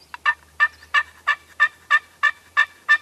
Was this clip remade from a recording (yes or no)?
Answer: no